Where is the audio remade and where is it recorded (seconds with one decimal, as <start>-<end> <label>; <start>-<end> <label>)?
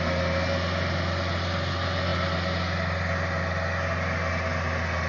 0.0-5.1 recorded